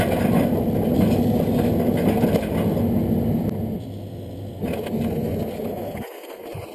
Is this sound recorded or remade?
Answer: recorded